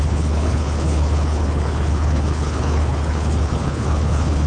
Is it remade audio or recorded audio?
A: remade